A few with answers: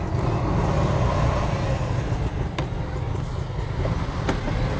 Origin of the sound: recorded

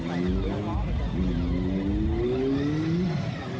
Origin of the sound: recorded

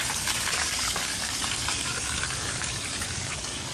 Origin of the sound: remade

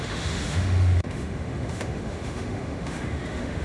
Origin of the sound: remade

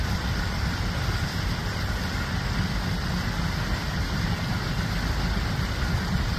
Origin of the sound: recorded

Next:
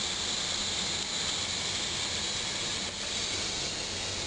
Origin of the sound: recorded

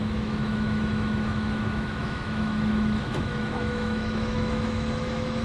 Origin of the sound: remade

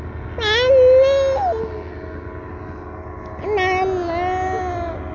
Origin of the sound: recorded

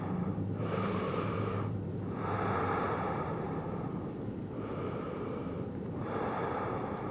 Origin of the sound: remade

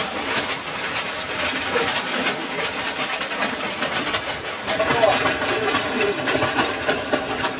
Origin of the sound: remade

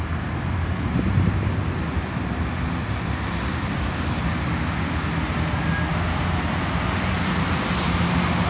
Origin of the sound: recorded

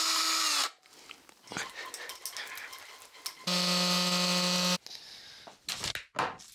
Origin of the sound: recorded